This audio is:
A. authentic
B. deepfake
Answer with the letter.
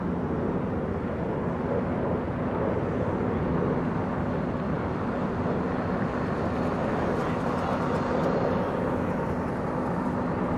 A